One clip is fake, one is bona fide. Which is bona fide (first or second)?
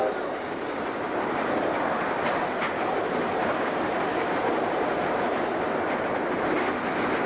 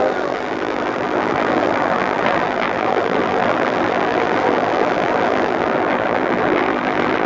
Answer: first